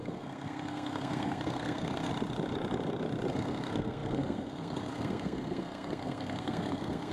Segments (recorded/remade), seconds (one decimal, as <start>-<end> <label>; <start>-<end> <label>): 0.0-2.1 remade; 2.1-3.3 recorded; 3.3-7.1 remade